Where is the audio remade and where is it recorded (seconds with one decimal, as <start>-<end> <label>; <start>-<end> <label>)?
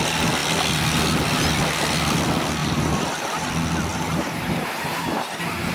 0.0-2.6 recorded; 2.6-3.5 remade; 3.5-3.9 recorded; 3.9-4.9 remade; 4.9-5.7 recorded